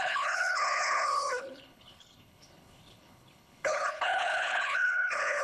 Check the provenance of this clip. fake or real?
fake